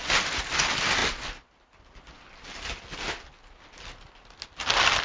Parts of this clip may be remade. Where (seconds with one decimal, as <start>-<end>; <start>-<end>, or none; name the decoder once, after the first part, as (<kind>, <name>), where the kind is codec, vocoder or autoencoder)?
none